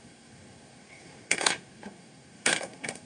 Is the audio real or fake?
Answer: fake